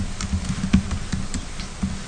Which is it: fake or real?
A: real